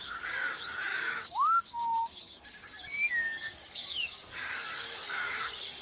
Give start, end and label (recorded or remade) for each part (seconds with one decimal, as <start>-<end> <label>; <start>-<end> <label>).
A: 0.0-5.8 remade

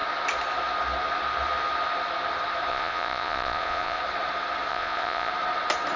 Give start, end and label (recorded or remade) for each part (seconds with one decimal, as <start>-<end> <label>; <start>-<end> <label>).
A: 0.0-2.7 recorded; 2.7-4.0 remade; 4.0-4.7 recorded; 4.7-5.3 remade; 5.3-6.0 recorded

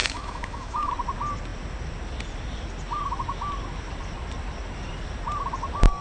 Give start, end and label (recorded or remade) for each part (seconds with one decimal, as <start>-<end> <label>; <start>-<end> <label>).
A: 0.0-0.9 remade; 0.9-6.0 recorded

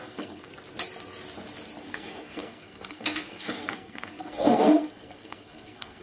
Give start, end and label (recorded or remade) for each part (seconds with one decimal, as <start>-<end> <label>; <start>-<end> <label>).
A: 0.0-0.5 remade; 0.5-1.8 recorded; 1.8-6.0 remade

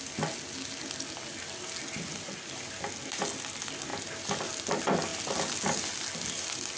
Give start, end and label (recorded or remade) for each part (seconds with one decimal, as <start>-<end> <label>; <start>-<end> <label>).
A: 0.0-6.8 recorded